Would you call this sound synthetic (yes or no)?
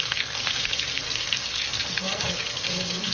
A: yes